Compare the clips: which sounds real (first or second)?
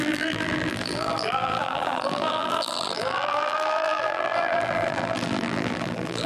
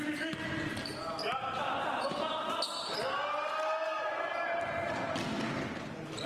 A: second